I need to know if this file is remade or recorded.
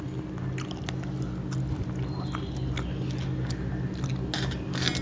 recorded